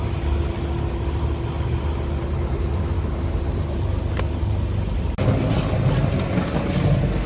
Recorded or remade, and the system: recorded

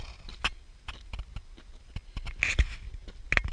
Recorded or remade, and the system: recorded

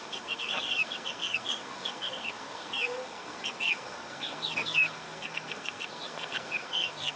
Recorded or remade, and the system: remade, codec, SNAC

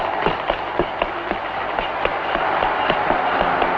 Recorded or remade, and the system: recorded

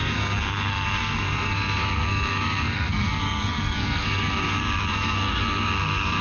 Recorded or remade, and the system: remade, codec, SNAC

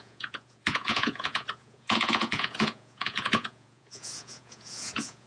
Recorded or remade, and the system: remade, vocoder, Vocos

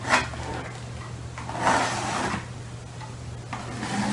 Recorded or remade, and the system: recorded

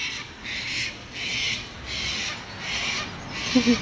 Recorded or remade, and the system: recorded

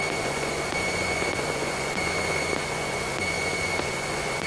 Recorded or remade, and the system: remade, vocoder, Vocos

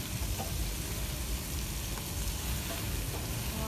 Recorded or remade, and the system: recorded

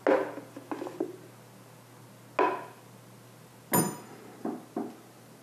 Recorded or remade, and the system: recorded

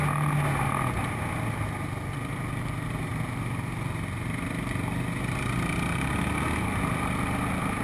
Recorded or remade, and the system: recorded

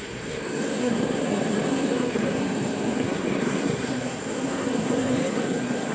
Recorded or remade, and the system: remade, codec, SNAC